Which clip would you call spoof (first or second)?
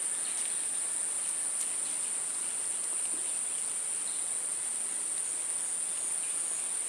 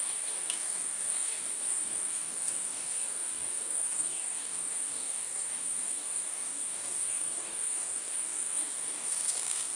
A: second